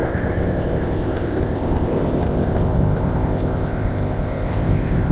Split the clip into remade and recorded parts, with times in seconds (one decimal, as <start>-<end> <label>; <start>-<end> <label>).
0.0-5.1 remade